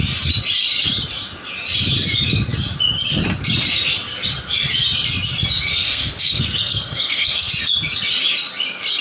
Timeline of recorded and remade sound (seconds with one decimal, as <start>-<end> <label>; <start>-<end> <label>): 0.0-5.7 recorded; 5.7-7.5 remade; 7.5-9.0 recorded